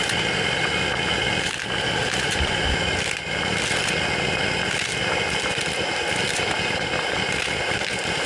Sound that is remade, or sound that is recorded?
recorded